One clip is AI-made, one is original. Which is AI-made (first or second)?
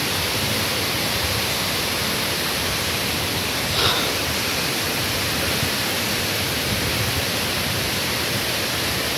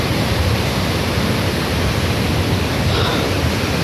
first